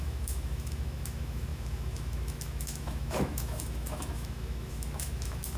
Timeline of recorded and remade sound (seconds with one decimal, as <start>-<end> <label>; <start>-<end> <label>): 0.0-5.6 remade